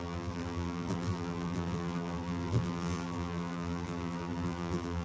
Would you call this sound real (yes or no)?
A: no